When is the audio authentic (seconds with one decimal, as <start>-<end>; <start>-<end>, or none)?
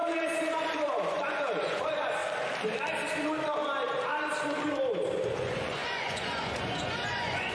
0.0-0.5; 2.2-5.3